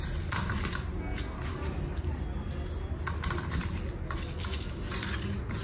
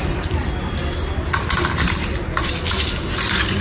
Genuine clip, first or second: first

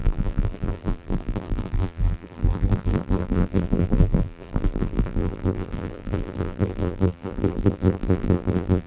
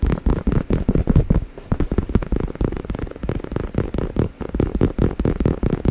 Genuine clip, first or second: second